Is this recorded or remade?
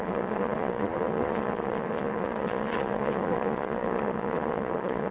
remade